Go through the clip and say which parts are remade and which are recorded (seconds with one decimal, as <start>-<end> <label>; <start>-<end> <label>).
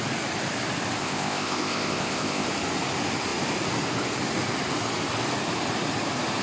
0.0-1.0 recorded; 1.0-2.5 remade; 2.5-6.4 recorded